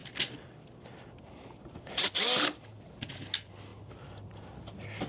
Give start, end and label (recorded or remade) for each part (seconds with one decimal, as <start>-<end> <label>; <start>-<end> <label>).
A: 0.0-5.1 recorded